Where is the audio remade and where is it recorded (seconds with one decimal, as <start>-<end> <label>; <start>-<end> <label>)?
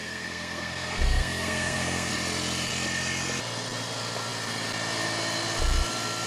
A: 0.0-2.1 remade; 2.1-6.3 recorded